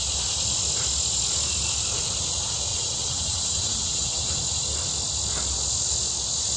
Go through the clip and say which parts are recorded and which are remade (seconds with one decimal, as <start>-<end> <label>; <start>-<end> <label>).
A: 0.0-2.7 recorded; 2.7-4.4 remade; 4.4-6.6 recorded